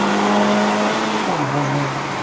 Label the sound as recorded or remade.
recorded